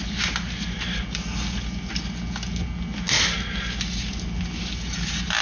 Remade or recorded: recorded